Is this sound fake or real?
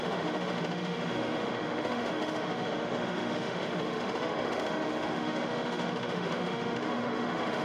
fake